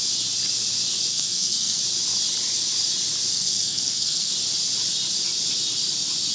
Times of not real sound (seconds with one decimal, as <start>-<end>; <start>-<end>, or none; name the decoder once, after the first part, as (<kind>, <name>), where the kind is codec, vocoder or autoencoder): 1.1-1.8 (codec, SNAC); 3.3-4.3